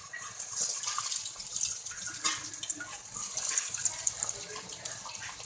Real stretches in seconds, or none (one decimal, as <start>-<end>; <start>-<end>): 0.0-5.5